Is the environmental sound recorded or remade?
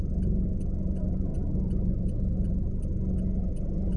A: recorded